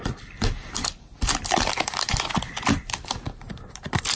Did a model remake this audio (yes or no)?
yes